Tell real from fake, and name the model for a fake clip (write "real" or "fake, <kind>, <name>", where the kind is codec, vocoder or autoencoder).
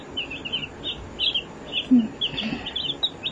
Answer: real